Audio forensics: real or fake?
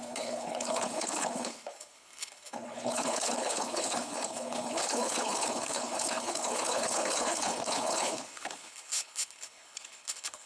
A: fake